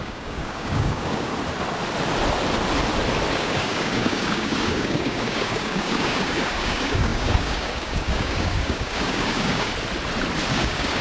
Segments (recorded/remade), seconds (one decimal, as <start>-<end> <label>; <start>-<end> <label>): 0.0-1.3 remade; 1.3-3.3 recorded; 3.3-9.7 remade; 9.7-10.5 recorded; 10.5-11.0 remade